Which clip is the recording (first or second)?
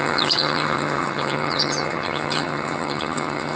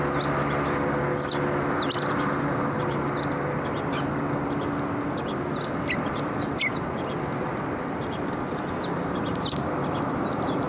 second